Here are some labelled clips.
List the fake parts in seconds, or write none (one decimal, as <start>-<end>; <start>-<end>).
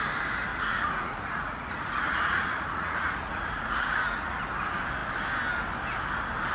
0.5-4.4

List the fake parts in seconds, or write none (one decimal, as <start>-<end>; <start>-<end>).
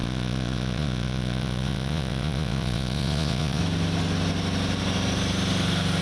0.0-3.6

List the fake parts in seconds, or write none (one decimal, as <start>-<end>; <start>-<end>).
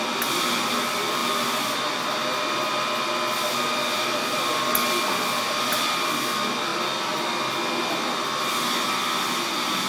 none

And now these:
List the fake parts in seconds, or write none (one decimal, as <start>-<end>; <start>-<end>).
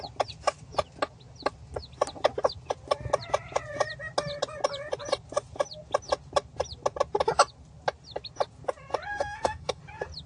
9.1-9.8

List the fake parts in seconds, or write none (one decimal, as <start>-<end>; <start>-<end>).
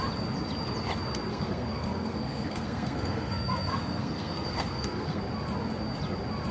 1.3-5.2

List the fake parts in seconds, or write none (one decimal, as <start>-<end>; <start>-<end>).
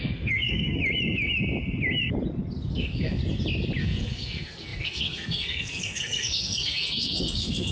0.0-0.8; 2.7-3.2; 3.8-7.7